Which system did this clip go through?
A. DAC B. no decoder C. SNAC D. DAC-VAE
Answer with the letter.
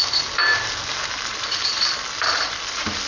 B